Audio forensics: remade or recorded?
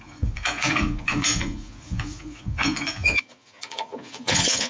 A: remade